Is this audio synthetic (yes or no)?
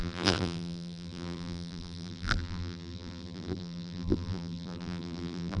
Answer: yes